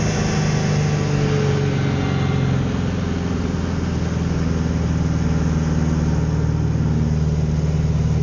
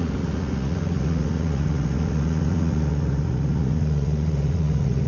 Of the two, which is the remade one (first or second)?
second